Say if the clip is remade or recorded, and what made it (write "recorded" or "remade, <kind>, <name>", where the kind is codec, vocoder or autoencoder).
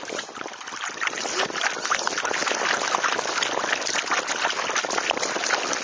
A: recorded